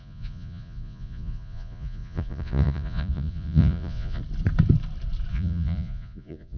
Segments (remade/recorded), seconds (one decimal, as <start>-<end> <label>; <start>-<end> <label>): 0.0-4.2 remade; 4.2-5.3 recorded; 5.3-6.6 remade